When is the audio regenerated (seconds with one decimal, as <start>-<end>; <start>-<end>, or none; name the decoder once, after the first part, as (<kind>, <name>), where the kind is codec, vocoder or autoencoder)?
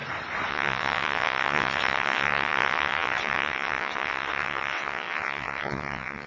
0.5-6.3 (vocoder, WaveNeXt)